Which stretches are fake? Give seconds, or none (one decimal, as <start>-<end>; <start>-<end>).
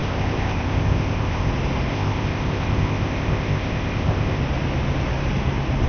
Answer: 0.0-1.5; 1.9-4.4